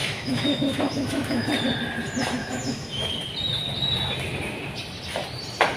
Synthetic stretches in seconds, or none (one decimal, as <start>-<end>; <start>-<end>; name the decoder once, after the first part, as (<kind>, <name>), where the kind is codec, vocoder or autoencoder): 0.0-1.5 (autoencoder, DAC-VAE); 2.4-3.1